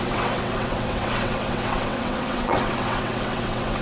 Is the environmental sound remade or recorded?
remade